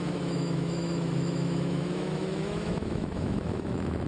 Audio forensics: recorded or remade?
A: remade